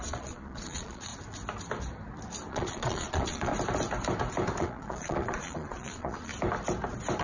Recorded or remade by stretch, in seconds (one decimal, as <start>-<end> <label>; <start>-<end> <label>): 0.0-1.1 remade; 1.1-2.5 recorded; 2.5-3.5 remade; 3.5-4.6 recorded; 4.6-6.3 remade; 6.3-7.2 recorded